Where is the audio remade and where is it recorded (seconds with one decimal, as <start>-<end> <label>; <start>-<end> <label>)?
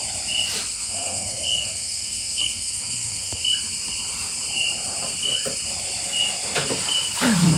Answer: 0.0-0.7 recorded; 0.7-3.4 remade; 3.4-7.6 recorded